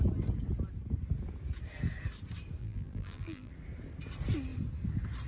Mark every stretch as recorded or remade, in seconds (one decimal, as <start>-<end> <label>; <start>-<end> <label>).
0.0-2.6 recorded; 2.6-3.5 remade; 3.5-5.3 recorded